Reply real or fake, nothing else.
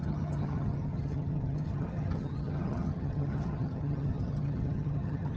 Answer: fake